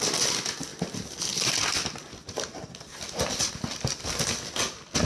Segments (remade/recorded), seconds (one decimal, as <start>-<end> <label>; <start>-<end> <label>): 0.0-5.1 recorded

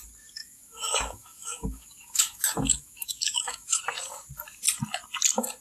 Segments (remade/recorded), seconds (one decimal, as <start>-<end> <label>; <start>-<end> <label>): 0.0-0.4 recorded; 0.4-3.8 remade; 3.8-5.6 recorded

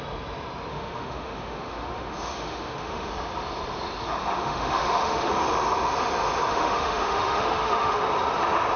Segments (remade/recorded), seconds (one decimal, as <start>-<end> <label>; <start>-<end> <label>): 0.0-0.7 recorded; 0.7-3.1 remade; 3.1-4.2 recorded; 4.2-5.3 remade; 5.3-6.5 recorded; 6.5-8.0 remade; 8.0-8.8 recorded

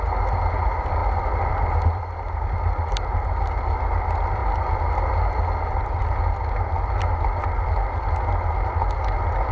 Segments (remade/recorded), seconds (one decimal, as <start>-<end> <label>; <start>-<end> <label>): 0.0-9.5 recorded

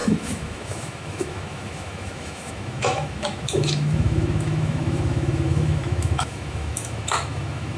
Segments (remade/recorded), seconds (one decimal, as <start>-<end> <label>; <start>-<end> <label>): 0.0-7.8 remade

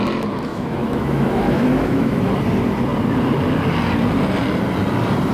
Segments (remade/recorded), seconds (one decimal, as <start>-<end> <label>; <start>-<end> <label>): 0.0-0.5 recorded; 0.5-2.3 remade; 2.3-5.3 recorded

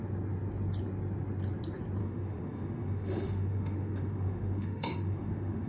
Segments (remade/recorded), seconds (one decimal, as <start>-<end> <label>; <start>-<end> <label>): 0.0-2.0 recorded; 2.0-5.7 remade